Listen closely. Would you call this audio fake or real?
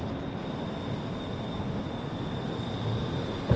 real